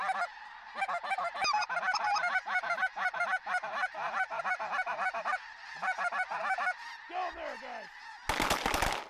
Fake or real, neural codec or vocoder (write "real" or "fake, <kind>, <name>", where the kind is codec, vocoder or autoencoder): real